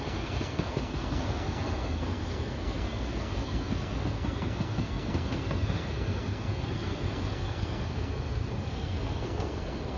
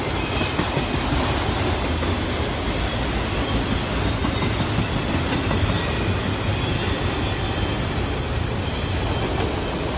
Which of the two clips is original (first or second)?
second